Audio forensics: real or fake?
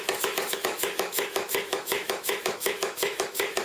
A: fake